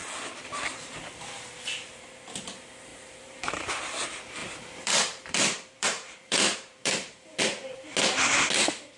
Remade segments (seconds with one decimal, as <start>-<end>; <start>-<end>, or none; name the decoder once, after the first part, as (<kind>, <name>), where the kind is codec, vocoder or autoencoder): 0.0-1.0 (vocoder, BigVGAN v2); 2.9-3.8; 4.4-7.4